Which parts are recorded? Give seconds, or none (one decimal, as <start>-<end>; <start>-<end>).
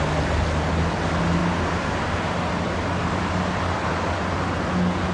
0.0-3.0; 3.8-5.1